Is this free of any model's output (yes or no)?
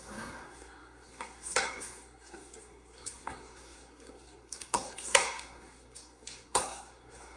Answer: no